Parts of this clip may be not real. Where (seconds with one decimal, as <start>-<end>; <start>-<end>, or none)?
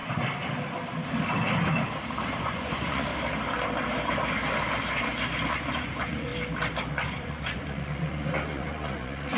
2.4-3.1; 5.5-6.3; 6.9-9.4